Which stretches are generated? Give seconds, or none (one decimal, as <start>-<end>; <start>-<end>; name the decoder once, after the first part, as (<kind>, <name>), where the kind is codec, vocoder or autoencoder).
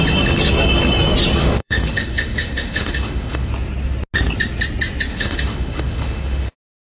1.4-3.5 (autoencoder, DAC-VAE); 5.1-6.5